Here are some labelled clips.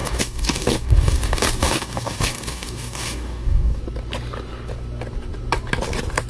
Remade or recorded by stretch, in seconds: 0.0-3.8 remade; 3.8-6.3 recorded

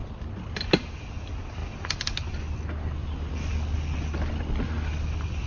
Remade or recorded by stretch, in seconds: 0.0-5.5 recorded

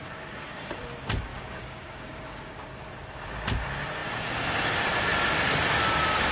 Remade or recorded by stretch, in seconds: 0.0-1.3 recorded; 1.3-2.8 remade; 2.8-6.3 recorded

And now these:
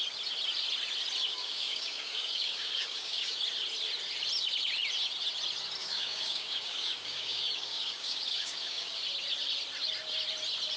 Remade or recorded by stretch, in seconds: 0.0-1.3 recorded; 1.3-3.4 remade; 3.4-5.8 recorded; 5.8-9.0 remade; 9.0-10.8 recorded

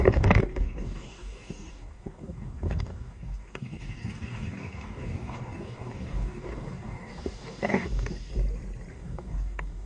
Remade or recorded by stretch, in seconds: 0.0-8.3 remade; 8.3-8.9 recorded; 8.9-9.9 remade